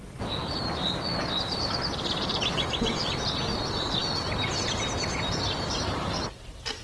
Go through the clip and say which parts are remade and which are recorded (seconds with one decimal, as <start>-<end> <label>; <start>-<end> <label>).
0.0-6.8 recorded